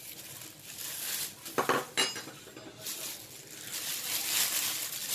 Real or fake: real